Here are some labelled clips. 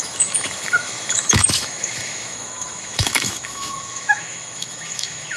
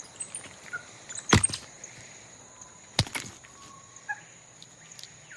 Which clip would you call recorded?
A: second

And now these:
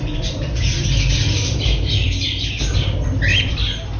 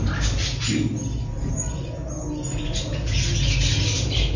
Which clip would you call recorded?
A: second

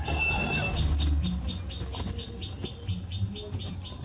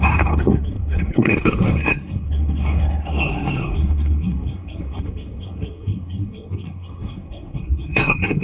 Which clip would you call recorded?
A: first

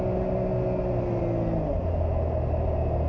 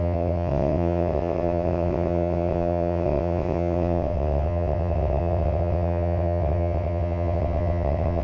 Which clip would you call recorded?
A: first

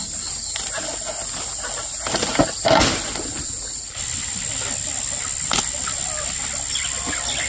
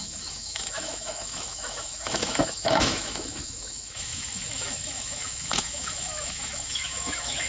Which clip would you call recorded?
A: first